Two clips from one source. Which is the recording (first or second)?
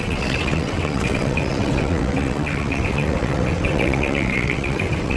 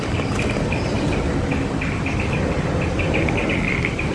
second